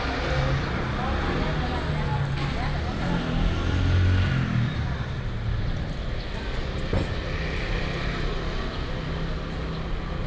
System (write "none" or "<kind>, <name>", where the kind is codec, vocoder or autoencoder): none